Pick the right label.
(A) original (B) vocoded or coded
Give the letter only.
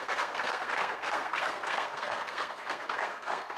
B